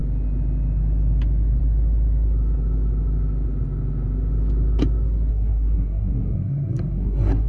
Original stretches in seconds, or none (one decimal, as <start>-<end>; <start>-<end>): 0.0-5.3